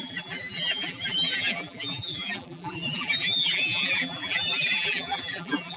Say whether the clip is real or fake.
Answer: fake